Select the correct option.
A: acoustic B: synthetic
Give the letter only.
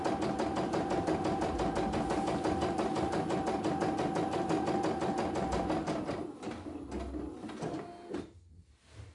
A